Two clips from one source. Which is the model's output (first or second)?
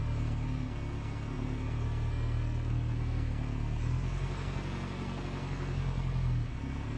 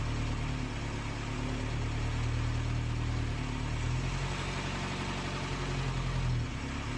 first